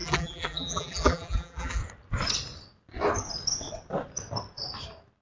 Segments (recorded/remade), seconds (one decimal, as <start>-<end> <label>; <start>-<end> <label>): 0.0-1.8 remade; 1.8-5.2 recorded

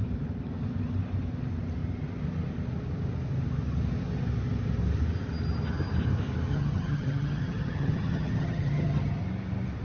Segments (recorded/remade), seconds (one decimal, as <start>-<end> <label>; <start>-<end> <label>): 0.0-6.5 recorded; 6.5-9.2 remade; 9.2-9.8 recorded

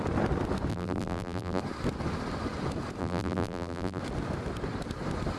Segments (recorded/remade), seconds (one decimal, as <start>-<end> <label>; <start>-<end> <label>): 0.0-0.7 recorded; 0.7-1.6 remade; 1.6-3.0 recorded; 3.0-4.0 remade; 4.0-5.4 recorded

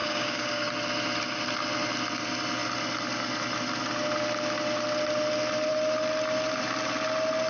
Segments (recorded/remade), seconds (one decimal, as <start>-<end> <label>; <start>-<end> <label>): 0.0-0.7 remade; 0.7-7.5 recorded

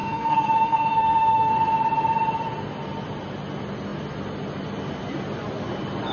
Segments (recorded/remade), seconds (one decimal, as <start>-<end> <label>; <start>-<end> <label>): 0.0-1.5 remade; 1.5-6.1 recorded

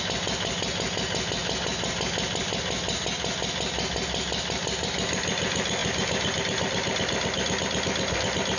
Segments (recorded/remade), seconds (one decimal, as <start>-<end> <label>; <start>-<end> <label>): 0.0-8.6 recorded